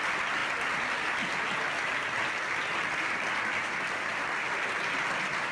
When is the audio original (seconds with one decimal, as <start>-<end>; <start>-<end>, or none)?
0.0-3.6; 4.6-5.5